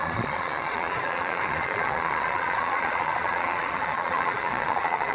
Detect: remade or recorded remade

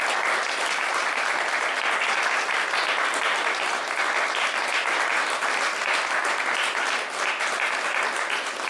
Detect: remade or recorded recorded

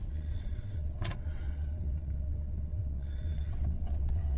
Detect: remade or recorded remade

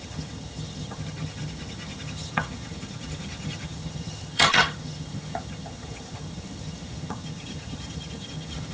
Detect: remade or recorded remade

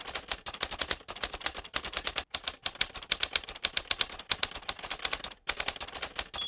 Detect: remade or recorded remade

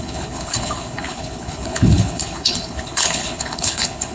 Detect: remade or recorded remade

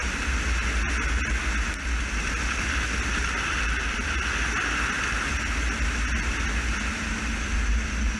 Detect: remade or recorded recorded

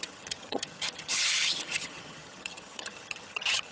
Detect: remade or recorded remade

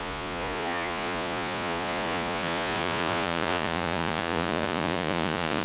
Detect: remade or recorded remade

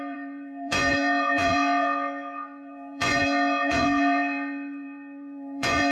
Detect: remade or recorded remade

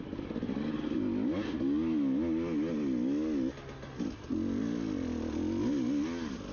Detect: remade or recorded recorded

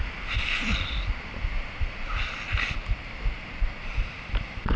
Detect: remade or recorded recorded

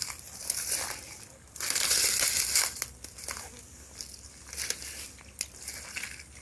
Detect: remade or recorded recorded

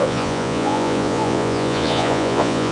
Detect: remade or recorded remade